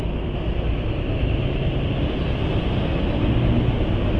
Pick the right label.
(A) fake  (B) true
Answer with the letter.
B